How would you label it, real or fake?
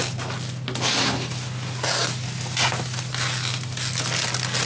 real